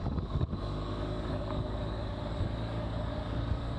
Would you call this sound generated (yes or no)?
yes